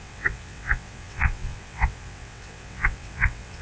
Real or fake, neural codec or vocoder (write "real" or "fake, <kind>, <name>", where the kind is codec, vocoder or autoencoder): fake, vocoder, WaveNeXt